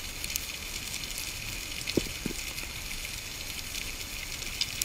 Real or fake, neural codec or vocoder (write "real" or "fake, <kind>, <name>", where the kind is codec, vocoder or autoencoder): real